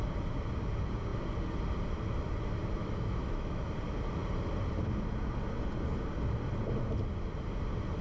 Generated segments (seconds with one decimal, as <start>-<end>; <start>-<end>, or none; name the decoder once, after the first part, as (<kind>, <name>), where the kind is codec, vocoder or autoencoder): 2.8-3.6 (autoencoder, DAC-VAE)